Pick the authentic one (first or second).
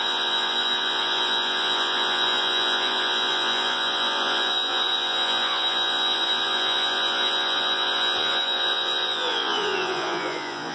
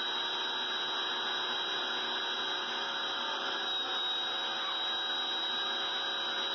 second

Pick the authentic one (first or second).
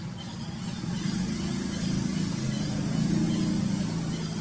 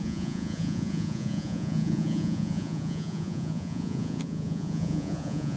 first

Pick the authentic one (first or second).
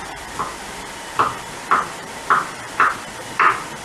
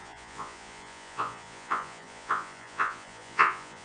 first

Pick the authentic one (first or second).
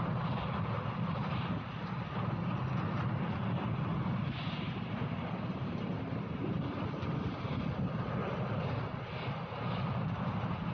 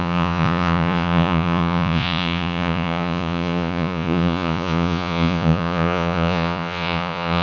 first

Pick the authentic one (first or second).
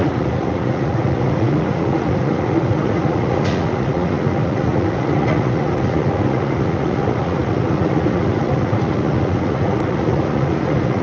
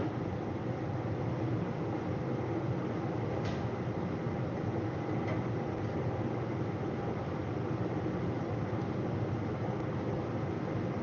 second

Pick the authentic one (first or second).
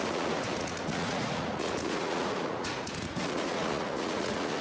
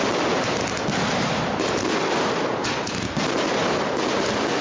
second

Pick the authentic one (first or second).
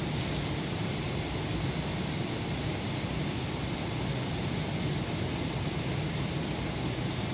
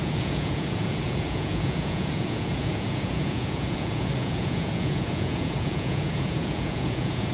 first